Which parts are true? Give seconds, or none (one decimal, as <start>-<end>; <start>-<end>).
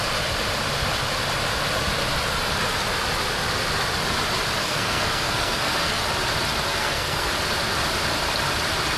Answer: 0.0-4.6; 6.0-6.7; 7.3-9.0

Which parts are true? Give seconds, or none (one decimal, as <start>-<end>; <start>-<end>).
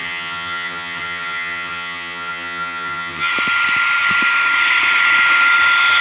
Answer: 3.3-6.0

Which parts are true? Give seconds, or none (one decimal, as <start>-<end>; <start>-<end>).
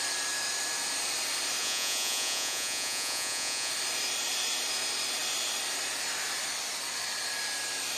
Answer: 0.0-1.6; 3.7-8.0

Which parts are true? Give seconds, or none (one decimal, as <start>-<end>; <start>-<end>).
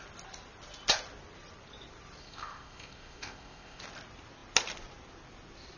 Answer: 0.0-2.2; 3.8-5.8